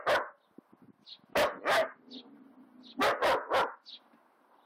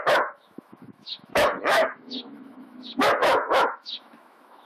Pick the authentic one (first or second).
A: first